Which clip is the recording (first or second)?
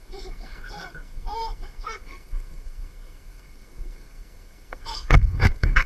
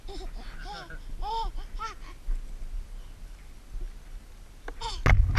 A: second